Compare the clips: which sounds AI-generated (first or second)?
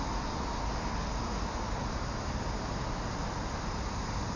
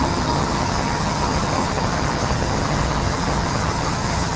second